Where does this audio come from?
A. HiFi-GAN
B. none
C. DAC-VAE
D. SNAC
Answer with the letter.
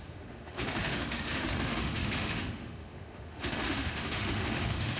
C